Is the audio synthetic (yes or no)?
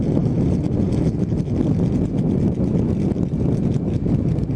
no